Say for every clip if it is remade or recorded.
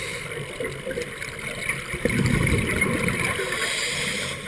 recorded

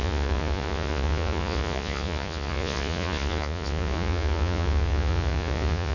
remade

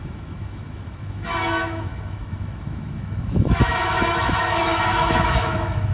remade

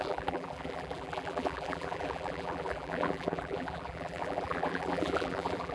remade